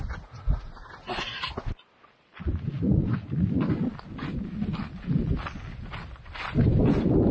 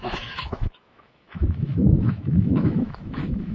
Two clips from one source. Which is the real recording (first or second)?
first